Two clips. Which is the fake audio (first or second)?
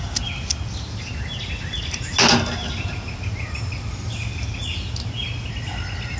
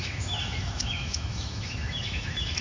second